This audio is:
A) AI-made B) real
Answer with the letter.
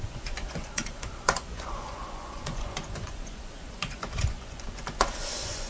A